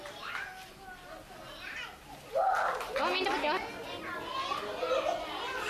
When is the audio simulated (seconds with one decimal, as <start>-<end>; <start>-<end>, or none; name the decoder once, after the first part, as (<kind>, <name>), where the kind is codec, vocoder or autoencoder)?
none